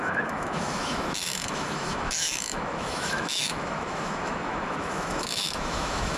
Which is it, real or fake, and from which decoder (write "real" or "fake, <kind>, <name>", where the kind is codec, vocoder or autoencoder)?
fake, autoencoder, DAC-VAE